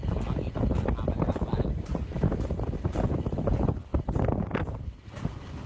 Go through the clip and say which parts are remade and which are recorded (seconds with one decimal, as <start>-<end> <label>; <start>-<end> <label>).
0.0-5.7 recorded